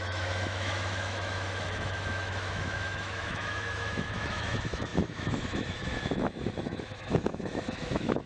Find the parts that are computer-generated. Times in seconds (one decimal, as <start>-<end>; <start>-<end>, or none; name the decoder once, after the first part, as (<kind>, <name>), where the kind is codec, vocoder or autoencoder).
0.0-8.3 (autoencoder, DAC-VAE)